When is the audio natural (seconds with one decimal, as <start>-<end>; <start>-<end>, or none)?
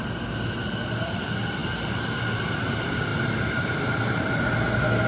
0.0-5.1